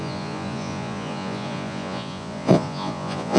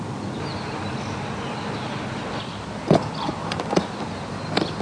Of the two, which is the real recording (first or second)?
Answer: second